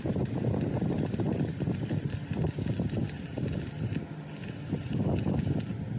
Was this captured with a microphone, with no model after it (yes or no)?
yes